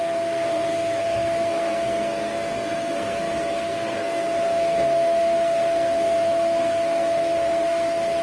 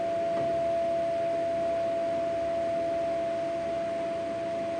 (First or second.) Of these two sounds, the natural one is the second